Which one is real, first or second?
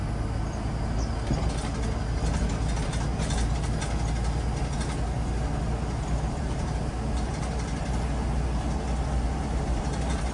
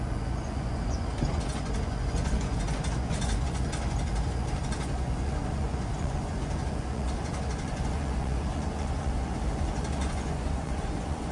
first